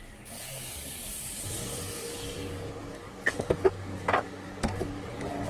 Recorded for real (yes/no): no